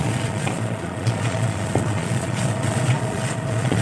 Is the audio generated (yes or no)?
yes